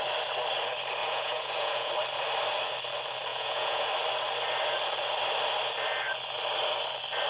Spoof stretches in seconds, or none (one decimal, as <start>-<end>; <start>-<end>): 1.0-1.9; 3.3-3.9